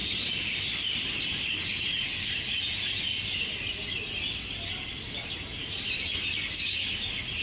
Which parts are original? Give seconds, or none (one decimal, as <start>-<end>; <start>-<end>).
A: 0.0-7.4